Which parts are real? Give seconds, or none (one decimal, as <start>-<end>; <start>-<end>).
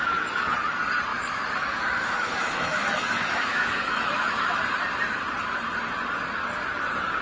0.0-1.1; 4.6-7.2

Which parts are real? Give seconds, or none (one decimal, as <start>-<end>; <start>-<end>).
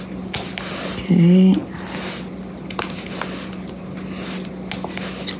0.0-5.4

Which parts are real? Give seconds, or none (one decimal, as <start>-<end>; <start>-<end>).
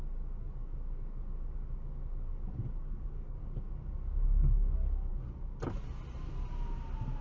0.0-7.2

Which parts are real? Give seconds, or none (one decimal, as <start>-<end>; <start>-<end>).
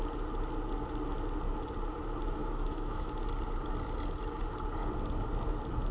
0.0-2.4; 3.1-5.9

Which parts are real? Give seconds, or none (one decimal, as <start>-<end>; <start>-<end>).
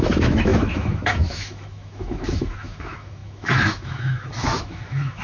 none